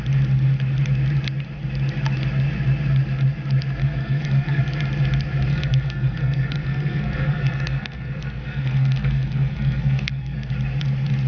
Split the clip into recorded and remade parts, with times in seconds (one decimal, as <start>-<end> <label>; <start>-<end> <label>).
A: 0.0-3.8 recorded; 3.8-4.6 remade; 4.6-5.5 recorded; 5.5-10.5 remade; 10.5-11.3 recorded